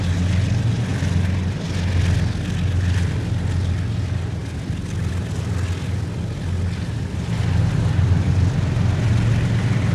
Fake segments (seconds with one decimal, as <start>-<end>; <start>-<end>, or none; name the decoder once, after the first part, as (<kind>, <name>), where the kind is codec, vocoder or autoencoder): none